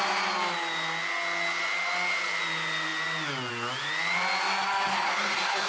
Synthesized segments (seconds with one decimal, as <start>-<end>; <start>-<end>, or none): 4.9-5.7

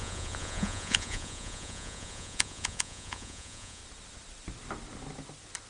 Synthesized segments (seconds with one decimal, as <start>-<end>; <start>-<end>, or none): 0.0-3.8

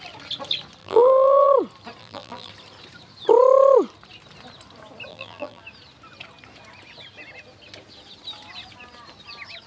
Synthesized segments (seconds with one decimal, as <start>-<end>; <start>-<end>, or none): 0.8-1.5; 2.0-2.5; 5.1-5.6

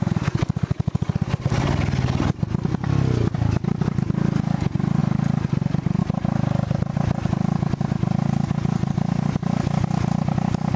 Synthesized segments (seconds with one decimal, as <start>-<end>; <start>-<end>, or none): none

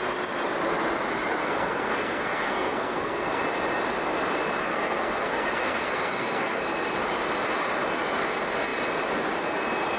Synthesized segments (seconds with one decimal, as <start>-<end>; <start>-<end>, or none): 1.4-3.4; 4.6-6.6

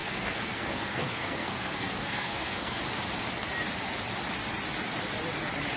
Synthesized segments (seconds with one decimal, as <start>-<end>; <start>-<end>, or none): 0.0-2.8

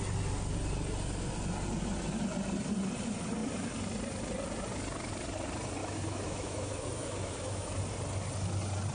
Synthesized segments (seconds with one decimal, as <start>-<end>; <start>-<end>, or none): 5.8-7.8

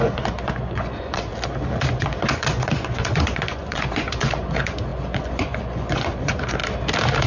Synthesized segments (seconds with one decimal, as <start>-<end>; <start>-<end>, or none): 0.0-1.3; 1.9-6.6